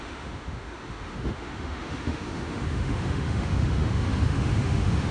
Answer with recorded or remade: remade